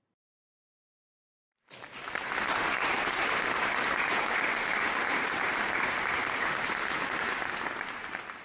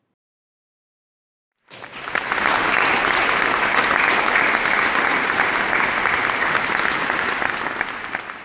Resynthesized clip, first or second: first